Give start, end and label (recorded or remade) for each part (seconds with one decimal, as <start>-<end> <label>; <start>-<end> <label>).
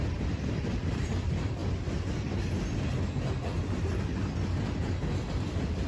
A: 0.0-1.6 remade; 1.6-3.0 recorded; 3.0-3.9 remade; 3.9-5.3 recorded; 5.3-5.9 remade